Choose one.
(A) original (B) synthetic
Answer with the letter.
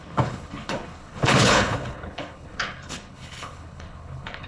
B